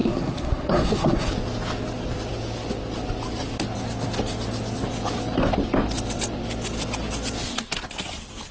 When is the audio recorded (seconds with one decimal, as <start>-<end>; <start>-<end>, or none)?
1.3-8.5